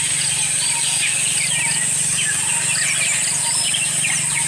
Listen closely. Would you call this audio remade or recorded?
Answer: recorded